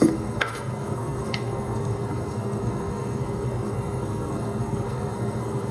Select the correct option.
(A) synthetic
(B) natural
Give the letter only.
A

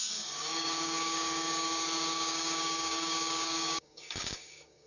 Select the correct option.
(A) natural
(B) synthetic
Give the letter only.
B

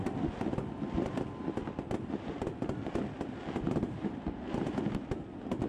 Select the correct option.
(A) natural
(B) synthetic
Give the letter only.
A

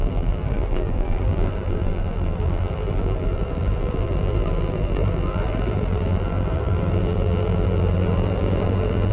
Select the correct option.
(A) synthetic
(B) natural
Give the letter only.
A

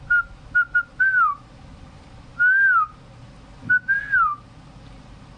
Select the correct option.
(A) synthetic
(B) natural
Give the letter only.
B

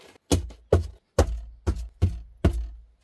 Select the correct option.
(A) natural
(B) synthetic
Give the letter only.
A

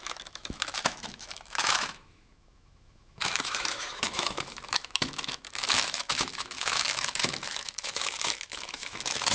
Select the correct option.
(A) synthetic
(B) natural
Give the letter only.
A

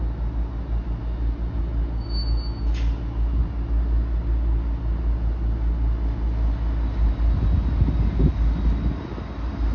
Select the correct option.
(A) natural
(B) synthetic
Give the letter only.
A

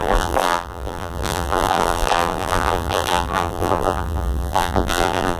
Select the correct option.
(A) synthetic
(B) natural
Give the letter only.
A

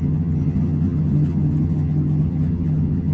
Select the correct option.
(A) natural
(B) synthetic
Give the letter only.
B